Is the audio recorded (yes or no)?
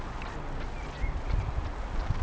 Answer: yes